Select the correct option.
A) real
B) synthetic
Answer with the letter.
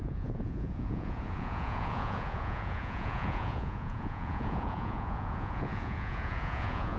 B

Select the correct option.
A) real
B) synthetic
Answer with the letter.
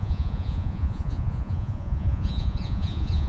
B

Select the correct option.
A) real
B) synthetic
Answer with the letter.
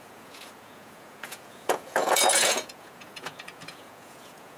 B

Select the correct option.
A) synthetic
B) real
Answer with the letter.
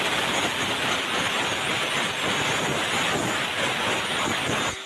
B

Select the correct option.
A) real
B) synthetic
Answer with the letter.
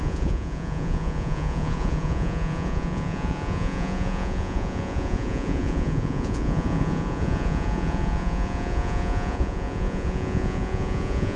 B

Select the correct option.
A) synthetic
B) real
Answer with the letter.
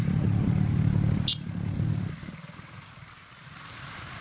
B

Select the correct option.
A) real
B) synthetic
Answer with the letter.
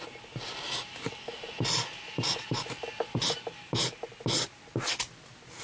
A